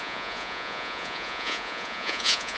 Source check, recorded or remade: remade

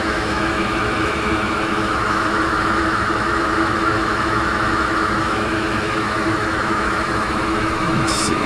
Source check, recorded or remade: remade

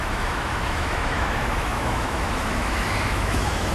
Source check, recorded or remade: remade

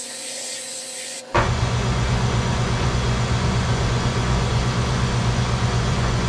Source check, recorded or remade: remade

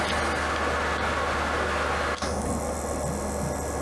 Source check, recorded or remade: recorded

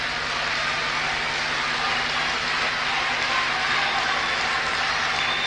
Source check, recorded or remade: recorded